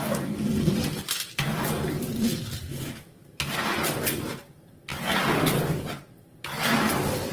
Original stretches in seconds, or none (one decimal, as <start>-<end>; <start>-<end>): 0.0-2.7; 3.4-7.3